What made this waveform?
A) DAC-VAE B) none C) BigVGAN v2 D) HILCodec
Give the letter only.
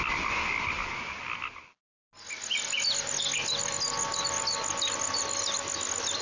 B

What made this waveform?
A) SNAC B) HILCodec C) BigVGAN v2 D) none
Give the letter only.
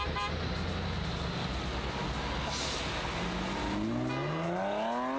D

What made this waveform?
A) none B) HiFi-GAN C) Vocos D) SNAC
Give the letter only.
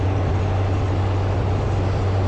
A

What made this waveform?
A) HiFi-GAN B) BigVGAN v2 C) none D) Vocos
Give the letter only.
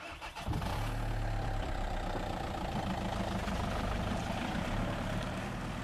B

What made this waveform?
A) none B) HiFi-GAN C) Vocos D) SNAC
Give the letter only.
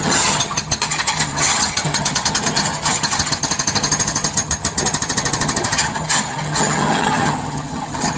B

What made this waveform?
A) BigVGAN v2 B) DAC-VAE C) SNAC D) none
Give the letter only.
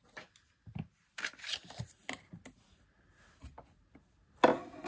D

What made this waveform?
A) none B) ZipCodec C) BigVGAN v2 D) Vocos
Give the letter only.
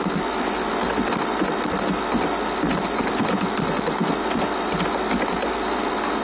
A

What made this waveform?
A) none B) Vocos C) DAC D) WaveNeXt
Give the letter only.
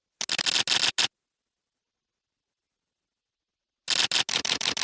A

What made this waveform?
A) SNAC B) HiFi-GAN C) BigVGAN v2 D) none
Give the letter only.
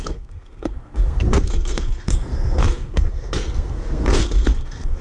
A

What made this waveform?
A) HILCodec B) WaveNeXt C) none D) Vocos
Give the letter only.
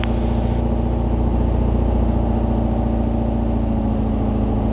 C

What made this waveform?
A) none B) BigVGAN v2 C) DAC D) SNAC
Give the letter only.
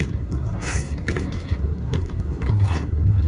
D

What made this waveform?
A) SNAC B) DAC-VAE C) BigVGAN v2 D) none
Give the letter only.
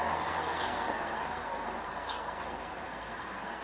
A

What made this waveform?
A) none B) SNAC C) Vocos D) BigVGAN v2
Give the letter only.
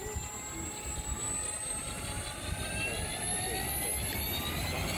A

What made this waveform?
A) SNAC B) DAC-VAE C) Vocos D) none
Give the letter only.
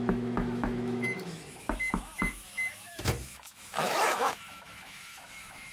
B